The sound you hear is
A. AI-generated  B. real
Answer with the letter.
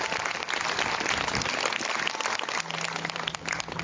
B